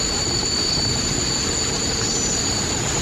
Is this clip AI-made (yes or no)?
no